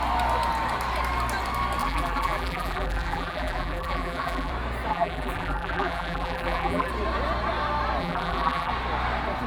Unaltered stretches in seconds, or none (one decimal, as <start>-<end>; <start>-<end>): 0.0-1.8; 4.5-4.9; 6.9-8.0; 8.7-9.5